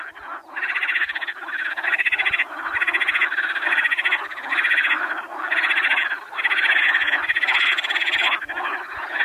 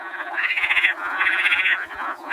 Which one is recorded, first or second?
first